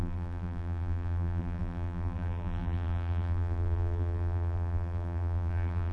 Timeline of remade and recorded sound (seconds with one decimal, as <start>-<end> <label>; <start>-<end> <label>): 0.0-5.9 remade